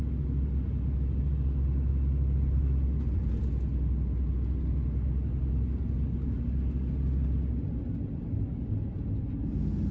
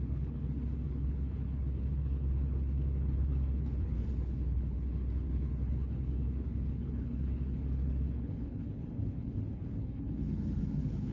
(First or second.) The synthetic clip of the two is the second